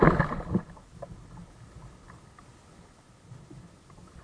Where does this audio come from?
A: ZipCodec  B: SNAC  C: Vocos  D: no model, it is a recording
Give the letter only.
D